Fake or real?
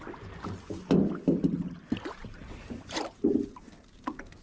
real